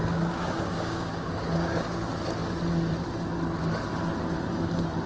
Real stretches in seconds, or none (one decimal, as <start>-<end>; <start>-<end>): 1.8-5.1